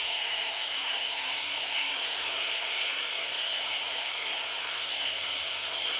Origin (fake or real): fake